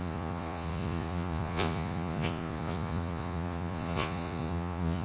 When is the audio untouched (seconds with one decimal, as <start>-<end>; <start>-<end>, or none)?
none